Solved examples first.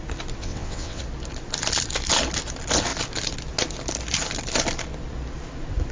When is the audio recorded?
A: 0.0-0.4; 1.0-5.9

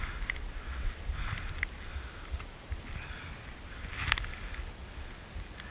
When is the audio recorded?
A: 0.0-0.4; 1.0-5.7

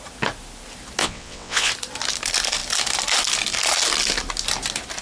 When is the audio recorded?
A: 0.0-1.0; 1.7-5.0

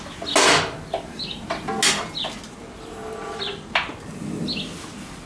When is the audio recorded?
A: 0.0-5.3

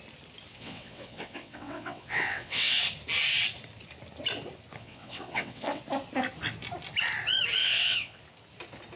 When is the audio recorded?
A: 0.0-0.5; 2.8-4.8; 5.8-7.6; 8.2-9.0

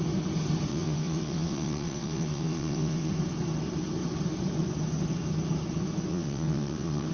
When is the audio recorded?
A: 0.0-0.7; 3.1-6.1

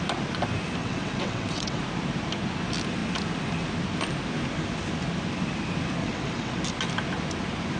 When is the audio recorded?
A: 0.0-0.8; 1.8-6.0; 6.6-7.8

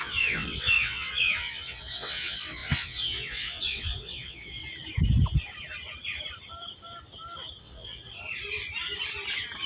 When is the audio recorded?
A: 4.6-7.6; 8.0-9.7